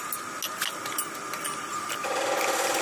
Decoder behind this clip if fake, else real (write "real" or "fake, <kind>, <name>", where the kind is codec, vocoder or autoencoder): real